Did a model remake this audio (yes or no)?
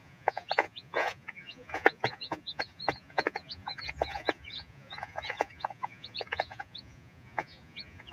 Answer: yes